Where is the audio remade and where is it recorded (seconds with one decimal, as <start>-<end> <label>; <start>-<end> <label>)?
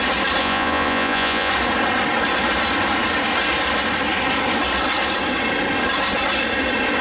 0.0-0.4 recorded; 0.4-1.5 remade; 1.5-7.0 recorded